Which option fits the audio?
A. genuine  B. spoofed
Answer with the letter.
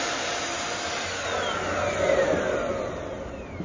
A